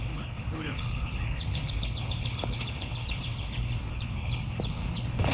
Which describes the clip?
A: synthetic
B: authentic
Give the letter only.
A